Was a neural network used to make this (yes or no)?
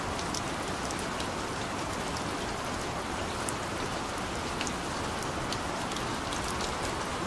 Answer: no